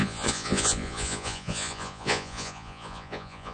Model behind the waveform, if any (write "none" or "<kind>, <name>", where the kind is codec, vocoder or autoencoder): vocoder, Vocos